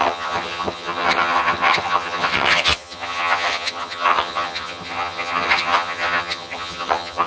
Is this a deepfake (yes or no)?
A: yes